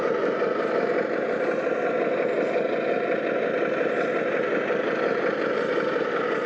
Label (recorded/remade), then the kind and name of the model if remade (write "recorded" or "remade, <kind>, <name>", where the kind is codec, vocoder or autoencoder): recorded